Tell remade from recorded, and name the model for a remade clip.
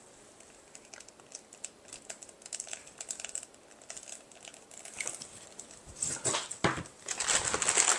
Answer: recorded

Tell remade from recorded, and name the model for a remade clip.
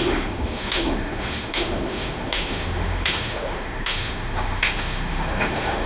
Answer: remade, autoencoder, DAC-VAE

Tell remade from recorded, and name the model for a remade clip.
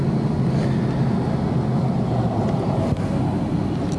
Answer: recorded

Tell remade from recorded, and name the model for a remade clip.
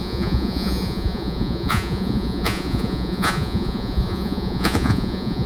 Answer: remade, vocoder, Vocos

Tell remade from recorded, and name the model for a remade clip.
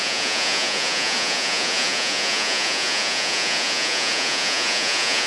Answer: remade, vocoder, Vocos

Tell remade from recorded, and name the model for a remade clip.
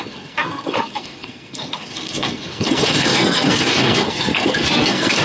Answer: remade, codec, SNAC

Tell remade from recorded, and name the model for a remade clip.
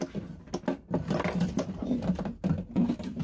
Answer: recorded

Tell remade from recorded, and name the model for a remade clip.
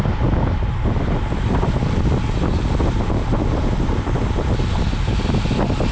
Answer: recorded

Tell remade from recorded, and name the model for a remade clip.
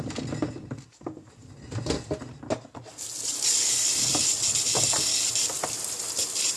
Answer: recorded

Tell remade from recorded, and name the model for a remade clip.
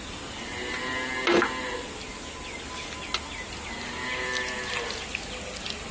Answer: recorded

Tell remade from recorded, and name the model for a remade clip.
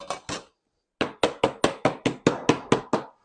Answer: recorded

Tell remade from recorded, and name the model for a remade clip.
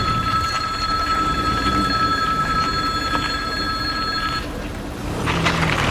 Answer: remade, vocoder, BigVGAN v2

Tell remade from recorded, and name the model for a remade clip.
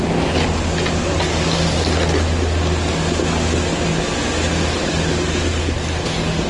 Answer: recorded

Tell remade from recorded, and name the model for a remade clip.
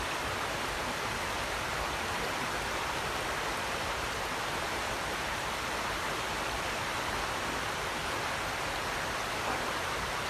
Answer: recorded